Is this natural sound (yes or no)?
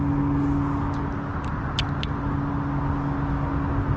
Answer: yes